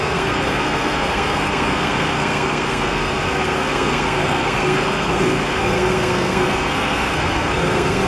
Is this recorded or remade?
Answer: remade